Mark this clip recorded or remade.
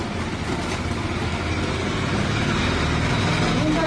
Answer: recorded